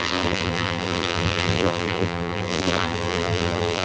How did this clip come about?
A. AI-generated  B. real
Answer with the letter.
A